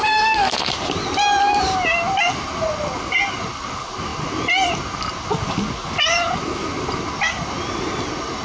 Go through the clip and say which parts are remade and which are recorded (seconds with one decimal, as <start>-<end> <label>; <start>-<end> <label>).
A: 0.0-0.7 remade; 0.7-8.4 recorded